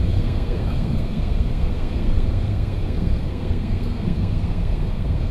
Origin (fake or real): fake